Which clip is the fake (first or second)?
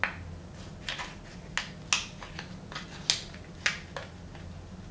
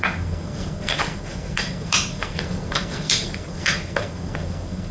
second